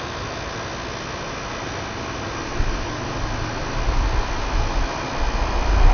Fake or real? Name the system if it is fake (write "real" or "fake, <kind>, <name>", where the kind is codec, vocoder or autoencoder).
real